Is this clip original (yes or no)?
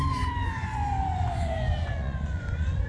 no